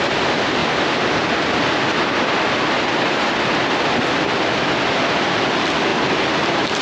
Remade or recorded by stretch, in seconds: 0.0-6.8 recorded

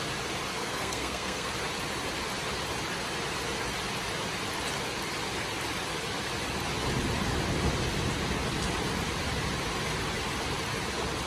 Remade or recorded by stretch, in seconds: 0.0-0.5 recorded; 0.5-1.5 remade; 1.5-11.3 recorded